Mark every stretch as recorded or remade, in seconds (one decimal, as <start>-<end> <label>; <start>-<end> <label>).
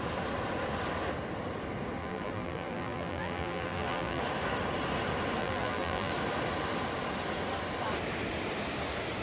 0.0-2.0 recorded; 2.0-4.2 remade; 4.2-5.4 recorded; 5.4-6.1 remade; 6.1-9.2 recorded